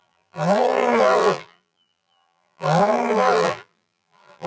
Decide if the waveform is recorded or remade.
remade